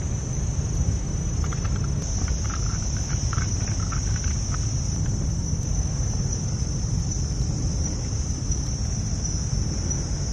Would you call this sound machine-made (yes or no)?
no